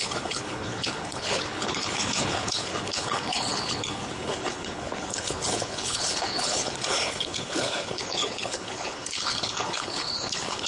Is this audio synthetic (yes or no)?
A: yes